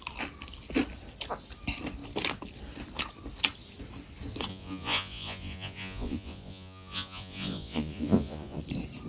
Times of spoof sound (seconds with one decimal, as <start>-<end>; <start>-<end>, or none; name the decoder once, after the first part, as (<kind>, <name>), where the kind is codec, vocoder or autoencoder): 4.5-8.6 (vocoder, Vocos)